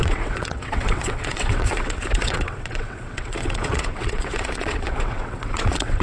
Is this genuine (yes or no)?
no